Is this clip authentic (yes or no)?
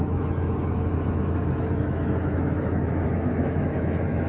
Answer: no